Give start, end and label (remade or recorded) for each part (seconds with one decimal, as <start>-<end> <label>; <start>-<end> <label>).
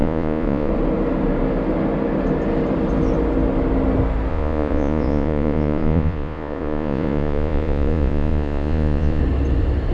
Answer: 0.0-0.7 remade; 0.7-4.3 recorded; 4.3-9.2 remade; 9.2-9.9 recorded